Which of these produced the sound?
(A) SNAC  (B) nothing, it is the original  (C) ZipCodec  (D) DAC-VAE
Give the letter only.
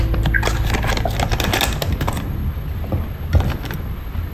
B